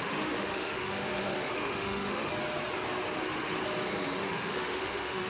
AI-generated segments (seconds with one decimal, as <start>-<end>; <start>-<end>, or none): 0.0-2.3; 3.2-3.6; 4.2-5.3